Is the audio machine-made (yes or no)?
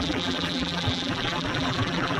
yes